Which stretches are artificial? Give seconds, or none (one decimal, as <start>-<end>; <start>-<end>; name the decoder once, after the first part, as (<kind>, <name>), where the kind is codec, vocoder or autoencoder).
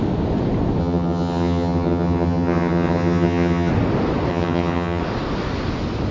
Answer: 0.8-3.7 (vocoder, HiFi-GAN); 4.3-5.0